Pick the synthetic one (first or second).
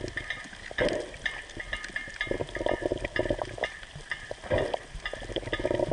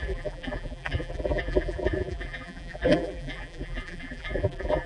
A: second